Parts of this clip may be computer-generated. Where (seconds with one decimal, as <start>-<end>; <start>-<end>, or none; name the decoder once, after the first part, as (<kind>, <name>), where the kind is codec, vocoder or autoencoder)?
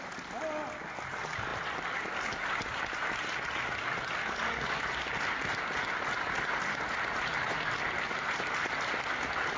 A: 4.2-4.8 (codec, DAC)